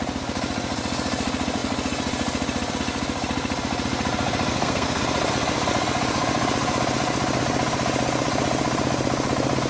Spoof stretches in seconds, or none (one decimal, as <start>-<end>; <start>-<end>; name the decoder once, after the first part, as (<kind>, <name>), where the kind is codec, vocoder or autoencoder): 4.5-5.0 (codec, SNAC)